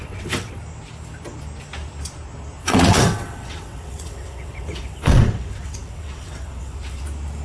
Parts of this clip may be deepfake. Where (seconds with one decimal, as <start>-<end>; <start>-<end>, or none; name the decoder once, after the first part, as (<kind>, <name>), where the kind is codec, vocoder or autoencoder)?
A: 0.0-0.6 (vocoder, WaveNeXt); 2.6-7.0